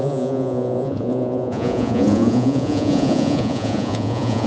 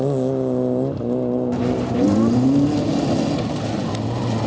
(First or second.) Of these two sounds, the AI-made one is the first